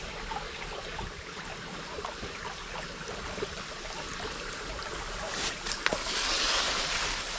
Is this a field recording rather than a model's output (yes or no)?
yes